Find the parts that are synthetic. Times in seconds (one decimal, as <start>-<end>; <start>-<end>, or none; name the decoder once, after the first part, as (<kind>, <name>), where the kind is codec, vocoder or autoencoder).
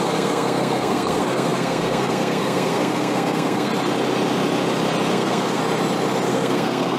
0.0-3.7 (codec, SNAC); 5.1-5.6; 6.3-7.0